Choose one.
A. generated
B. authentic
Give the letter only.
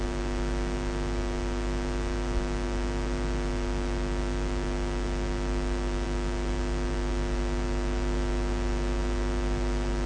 B